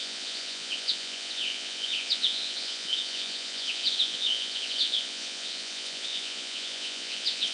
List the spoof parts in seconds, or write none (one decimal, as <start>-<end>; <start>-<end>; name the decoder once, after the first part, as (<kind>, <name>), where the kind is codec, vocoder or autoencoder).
0.0-7.5 (vocoder, Vocos)